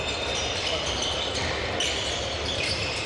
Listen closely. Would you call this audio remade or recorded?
recorded